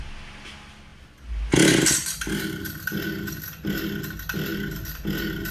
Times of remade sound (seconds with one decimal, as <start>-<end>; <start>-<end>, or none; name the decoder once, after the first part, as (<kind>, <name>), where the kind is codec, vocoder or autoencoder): none